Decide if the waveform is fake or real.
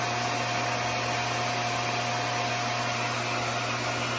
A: real